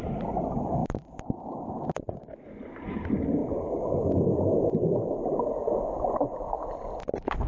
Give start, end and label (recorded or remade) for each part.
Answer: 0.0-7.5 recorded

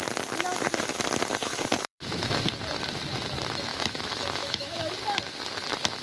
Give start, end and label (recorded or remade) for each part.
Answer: 0.0-1.4 recorded; 1.4-2.4 remade; 2.4-3.7 recorded; 3.7-4.9 remade; 4.9-6.0 recorded

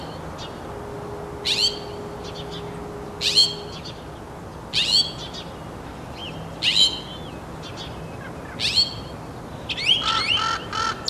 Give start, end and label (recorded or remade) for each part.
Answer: 0.0-11.1 recorded

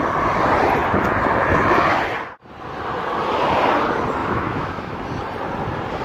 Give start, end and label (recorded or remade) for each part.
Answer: 0.0-4.2 recorded; 4.2-5.0 remade; 5.0-6.0 recorded